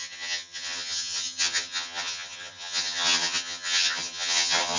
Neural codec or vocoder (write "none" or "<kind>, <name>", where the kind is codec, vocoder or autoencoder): vocoder, HiFi-GAN